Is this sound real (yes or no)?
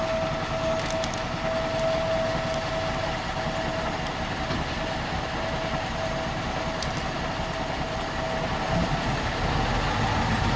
yes